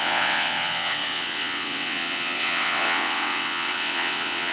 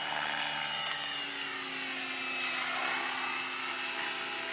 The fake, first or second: first